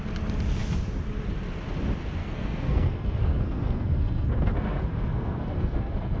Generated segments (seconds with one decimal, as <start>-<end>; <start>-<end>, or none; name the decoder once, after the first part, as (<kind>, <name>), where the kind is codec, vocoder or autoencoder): 2.2-6.2 (codec, SNAC)